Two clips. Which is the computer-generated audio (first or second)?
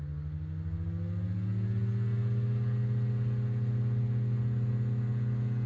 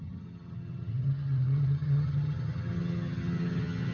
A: second